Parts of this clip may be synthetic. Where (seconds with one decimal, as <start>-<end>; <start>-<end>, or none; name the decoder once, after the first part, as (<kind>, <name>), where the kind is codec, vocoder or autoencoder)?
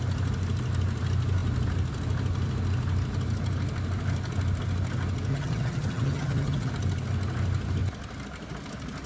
5.3-6.7 (vocoder, HiFi-GAN)